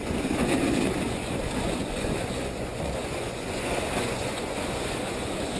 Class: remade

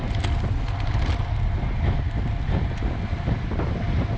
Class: recorded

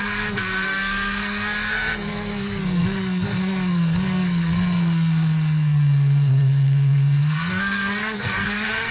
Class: remade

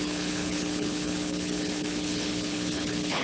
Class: remade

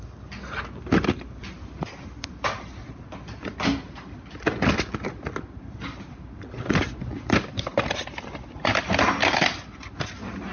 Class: recorded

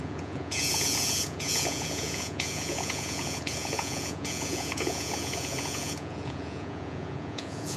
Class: remade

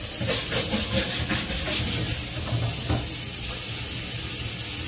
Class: recorded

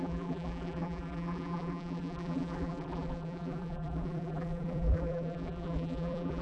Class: remade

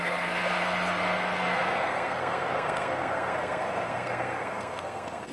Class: remade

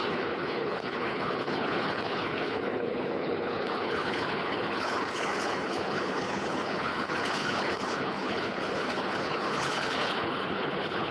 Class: remade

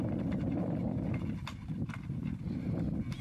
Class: recorded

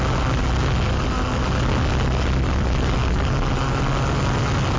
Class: recorded